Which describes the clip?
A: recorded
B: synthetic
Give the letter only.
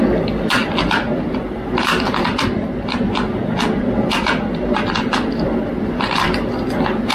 B